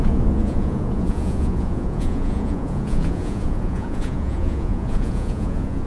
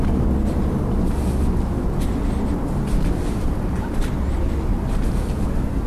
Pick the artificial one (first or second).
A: first